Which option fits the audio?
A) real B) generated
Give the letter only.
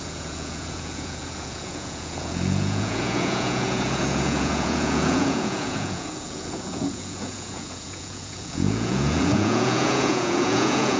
B